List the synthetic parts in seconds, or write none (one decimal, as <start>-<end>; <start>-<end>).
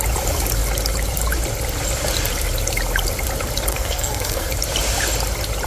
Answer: 3.7-4.5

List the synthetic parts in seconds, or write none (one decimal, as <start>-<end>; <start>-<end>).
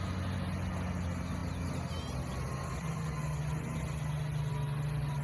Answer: none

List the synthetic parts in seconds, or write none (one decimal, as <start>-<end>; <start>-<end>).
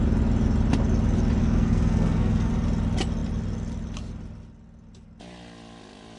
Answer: 1.4-2.5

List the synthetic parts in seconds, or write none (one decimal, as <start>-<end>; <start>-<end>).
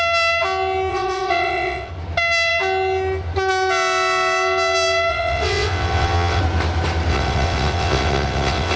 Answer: 0.9-1.9; 5.1-6.4; 7.1-8.8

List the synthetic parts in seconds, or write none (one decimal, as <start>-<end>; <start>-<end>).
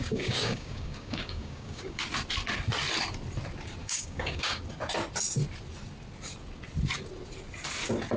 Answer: 0.0-2.0; 3.8-4.6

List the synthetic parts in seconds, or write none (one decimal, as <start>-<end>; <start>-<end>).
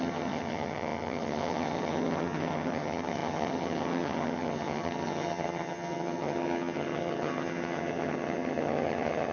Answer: 0.0-9.3